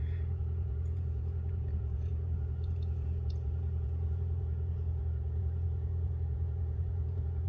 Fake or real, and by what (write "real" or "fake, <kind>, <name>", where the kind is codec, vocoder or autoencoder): fake, vocoder, Vocos